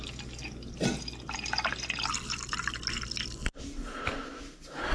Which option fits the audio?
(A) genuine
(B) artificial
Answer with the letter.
A